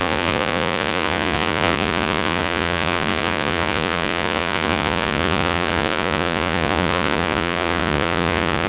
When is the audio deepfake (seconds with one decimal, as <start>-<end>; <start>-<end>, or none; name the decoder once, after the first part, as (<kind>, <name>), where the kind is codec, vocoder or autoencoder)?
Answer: 0.0-8.7 (vocoder, Vocos)